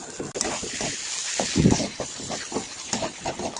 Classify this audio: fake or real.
real